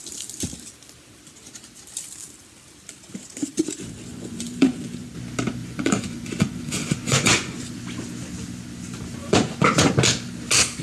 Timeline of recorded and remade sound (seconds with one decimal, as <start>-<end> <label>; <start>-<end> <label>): 0.0-4.1 recorded; 4.1-5.1 remade; 5.1-5.6 recorded; 5.6-7.8 remade; 7.8-9.2 recorded; 9.2-9.9 remade; 9.9-10.8 recorded